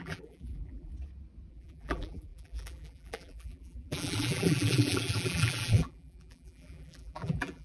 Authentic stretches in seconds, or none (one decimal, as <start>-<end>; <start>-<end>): 0.9-1.5